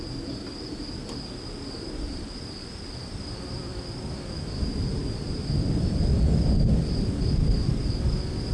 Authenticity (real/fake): real